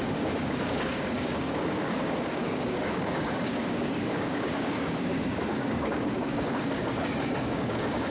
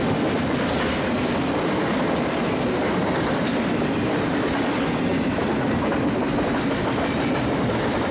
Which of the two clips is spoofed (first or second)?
first